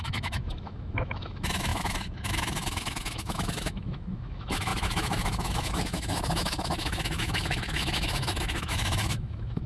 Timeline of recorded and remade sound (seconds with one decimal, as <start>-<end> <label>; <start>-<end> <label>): 0.0-9.7 remade